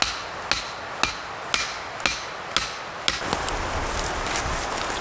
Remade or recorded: recorded